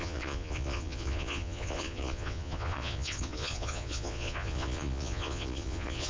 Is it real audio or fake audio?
fake